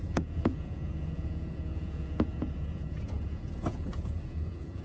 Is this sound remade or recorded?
remade